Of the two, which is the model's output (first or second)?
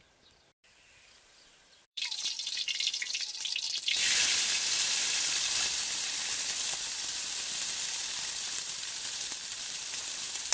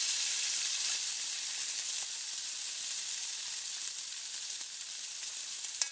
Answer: first